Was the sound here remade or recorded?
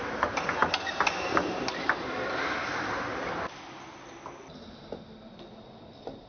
recorded